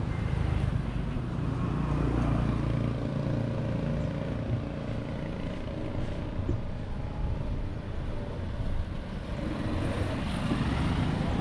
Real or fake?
real